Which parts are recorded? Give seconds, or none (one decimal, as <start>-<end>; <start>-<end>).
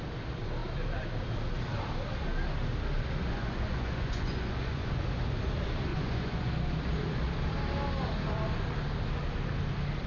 0.0-3.2; 4.9-5.9; 6.5-10.1